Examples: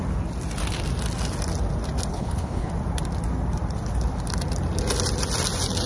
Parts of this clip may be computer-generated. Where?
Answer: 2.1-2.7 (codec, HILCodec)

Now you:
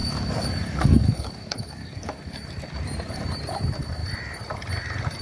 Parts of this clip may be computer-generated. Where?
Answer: 0.0-2.5 (codec, DAC)

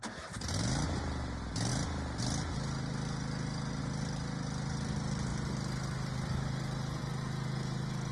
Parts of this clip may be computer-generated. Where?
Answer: none

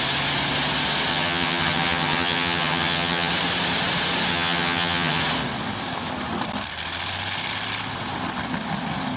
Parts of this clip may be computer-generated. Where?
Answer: 1.1-3.3 (vocoder, HiFi-GAN); 4.3-5.2

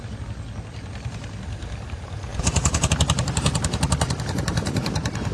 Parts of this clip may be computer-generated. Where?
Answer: 2.3-2.9 (vocoder, Vocos)

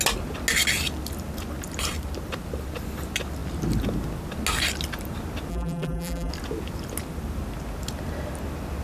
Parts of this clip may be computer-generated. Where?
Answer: 5.5-6.3 (vocoder, BigVGAN v2)